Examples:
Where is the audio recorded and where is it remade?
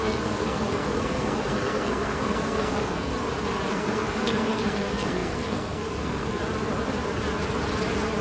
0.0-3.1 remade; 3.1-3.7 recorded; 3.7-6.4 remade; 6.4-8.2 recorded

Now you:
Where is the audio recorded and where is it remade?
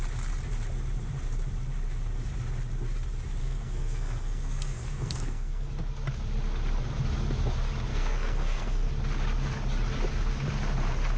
0.0-3.4 recorded; 3.4-5.7 remade; 5.7-7.9 recorded; 7.9-8.9 remade; 8.9-11.2 recorded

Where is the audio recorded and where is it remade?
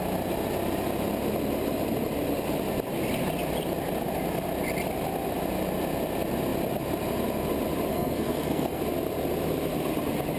0.0-7.9 recorded; 7.9-8.8 remade; 8.8-10.4 recorded